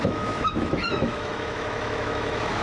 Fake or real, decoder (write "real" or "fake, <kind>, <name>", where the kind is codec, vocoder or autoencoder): fake, autoencoder, DAC-VAE